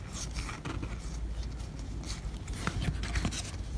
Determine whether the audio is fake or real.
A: real